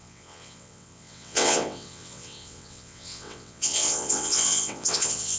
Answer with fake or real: fake